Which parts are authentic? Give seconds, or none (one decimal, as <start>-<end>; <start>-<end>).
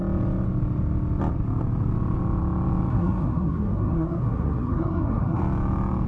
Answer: 0.0-2.9; 5.4-6.1